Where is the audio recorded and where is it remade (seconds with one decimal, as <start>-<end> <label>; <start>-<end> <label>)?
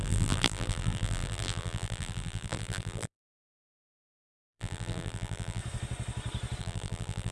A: 0.0-5.6 remade; 5.6-6.6 recorded; 6.6-7.3 remade